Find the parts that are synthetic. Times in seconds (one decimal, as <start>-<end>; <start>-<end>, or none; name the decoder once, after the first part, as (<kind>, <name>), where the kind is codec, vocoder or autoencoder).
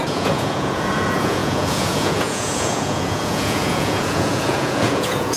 0.0-5.4 (vocoder, Vocos)